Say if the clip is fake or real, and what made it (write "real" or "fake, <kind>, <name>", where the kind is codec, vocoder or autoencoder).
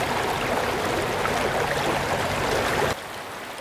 real